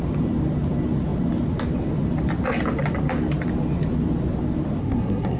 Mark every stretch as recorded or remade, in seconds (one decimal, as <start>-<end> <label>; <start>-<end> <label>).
0.0-4.8 recorded; 4.8-5.4 remade